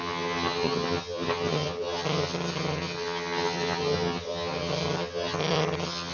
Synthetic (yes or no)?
yes